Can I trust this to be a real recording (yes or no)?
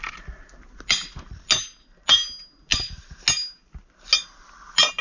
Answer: yes